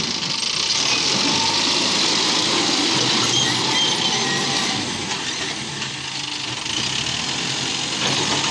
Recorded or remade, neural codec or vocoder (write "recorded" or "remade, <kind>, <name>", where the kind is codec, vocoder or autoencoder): recorded